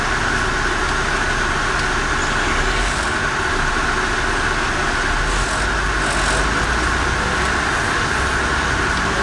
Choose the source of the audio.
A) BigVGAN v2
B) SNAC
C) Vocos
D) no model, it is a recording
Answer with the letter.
D